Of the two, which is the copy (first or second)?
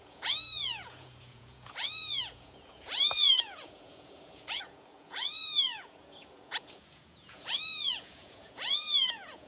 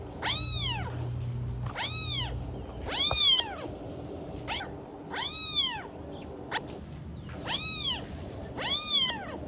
first